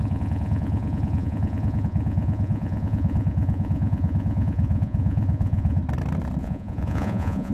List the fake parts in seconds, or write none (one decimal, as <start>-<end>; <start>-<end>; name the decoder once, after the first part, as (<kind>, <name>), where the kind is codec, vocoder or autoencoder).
0.0-5.8 (vocoder, Vocos); 6.4-7.5